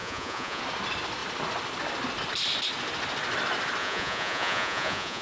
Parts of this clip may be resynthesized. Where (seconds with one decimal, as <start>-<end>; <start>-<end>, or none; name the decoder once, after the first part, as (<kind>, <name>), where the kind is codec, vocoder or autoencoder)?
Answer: 0.0-0.6 (vocoder, Vocos); 3.8-5.2